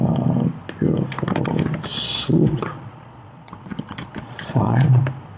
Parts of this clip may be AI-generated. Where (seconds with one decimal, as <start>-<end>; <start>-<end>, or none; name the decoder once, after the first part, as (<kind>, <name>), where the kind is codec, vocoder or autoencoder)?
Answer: 1.9-5.0 (vocoder, Vocos)